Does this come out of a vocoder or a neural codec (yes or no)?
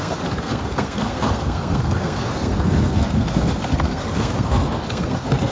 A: yes